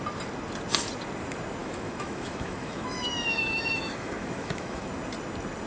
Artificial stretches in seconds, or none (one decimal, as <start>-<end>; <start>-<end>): 1.6-4.9